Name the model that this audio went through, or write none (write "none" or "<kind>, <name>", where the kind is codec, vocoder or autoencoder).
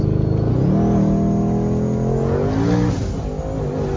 none